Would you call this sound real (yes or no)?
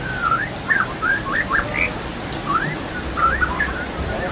yes